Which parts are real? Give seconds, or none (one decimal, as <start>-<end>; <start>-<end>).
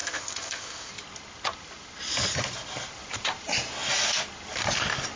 0.9-5.2